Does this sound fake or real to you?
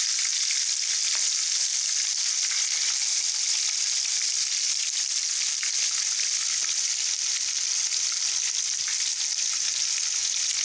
real